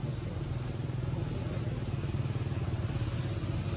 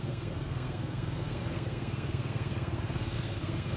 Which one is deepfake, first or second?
second